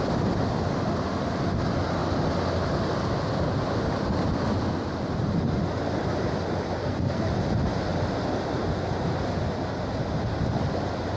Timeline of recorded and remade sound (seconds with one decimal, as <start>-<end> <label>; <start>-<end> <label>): 0.0-6.8 recorded; 6.8-7.3 remade; 7.3-11.2 recorded